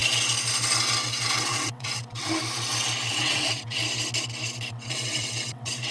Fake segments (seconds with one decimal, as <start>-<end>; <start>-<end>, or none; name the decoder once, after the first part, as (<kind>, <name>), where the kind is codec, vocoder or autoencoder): 1.4-2.4 (vocoder, WaveNeXt); 3.1-3.8; 4.7-5.9